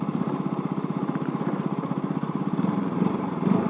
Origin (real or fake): fake